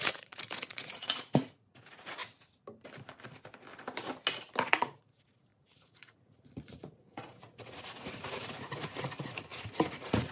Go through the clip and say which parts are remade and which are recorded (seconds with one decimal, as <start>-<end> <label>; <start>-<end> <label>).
0.0-2.2 remade; 2.2-4.7 recorded; 4.7-10.3 remade